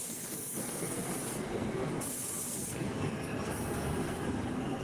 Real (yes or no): no